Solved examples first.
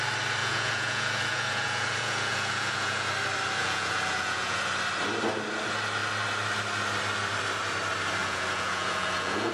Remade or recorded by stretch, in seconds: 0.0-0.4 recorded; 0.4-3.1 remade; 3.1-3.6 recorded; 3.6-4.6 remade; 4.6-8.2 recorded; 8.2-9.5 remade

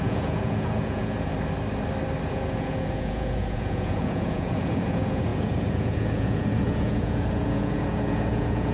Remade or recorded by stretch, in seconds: 0.0-1.3 remade; 1.3-2.2 recorded; 2.2-8.7 remade

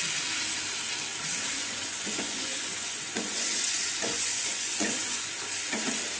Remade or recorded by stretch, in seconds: 0.0-1.6 recorded; 1.6-5.3 remade; 5.3-6.2 recorded

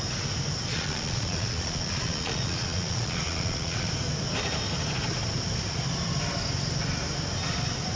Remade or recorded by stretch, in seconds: 0.0-0.7 recorded; 0.7-3.9 remade; 3.9-8.0 recorded